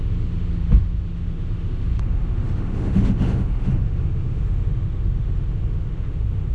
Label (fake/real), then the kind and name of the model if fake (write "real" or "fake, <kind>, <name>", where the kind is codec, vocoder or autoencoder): fake, autoencoder, DAC-VAE